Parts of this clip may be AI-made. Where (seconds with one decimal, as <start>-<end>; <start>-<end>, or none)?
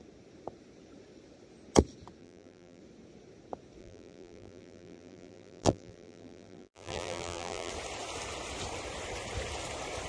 2.2-2.8; 3.8-7.7